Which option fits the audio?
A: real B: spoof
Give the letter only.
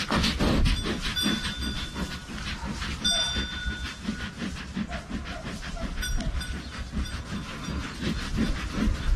A